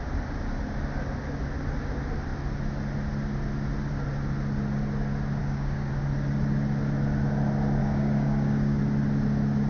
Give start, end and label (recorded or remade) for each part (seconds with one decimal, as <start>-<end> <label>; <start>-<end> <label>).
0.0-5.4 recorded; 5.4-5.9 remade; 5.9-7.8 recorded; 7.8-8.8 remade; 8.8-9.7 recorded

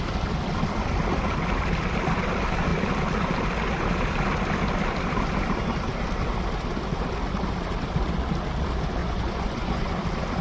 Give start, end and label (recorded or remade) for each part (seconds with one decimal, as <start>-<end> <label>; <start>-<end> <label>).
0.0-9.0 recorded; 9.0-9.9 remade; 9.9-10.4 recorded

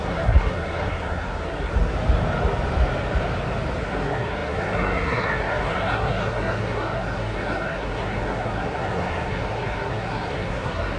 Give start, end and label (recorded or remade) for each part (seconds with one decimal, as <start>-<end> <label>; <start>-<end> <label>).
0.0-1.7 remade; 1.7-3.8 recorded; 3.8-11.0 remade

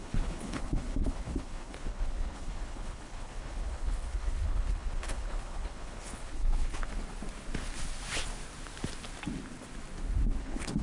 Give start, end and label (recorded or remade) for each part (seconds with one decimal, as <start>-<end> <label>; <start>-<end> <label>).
0.0-6.9 remade; 6.9-10.4 recorded; 10.4-10.8 remade